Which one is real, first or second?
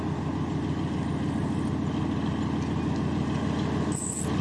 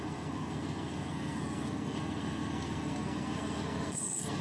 first